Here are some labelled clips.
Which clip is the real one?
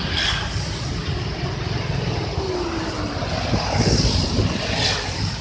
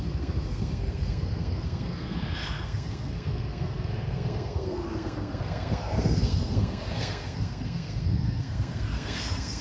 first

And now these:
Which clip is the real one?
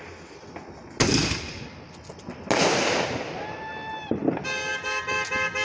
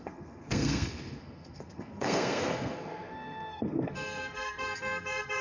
first